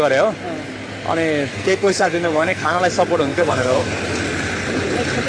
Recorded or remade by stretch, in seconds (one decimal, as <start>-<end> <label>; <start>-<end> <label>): 0.0-1.5 recorded; 1.5-2.8 remade; 2.8-3.3 recorded; 3.3-3.9 remade; 3.9-5.3 recorded